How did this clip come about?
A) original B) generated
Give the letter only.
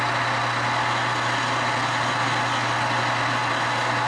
A